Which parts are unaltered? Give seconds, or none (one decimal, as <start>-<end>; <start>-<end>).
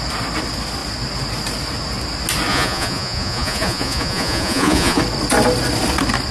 0.0-2.5; 5.0-6.3